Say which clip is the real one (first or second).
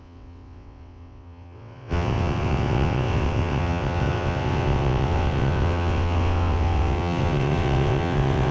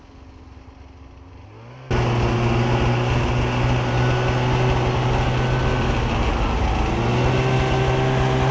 second